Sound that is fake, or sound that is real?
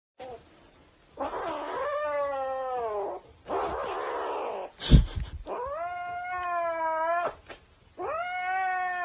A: real